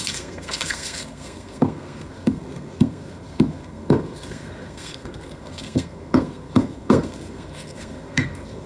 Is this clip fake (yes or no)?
yes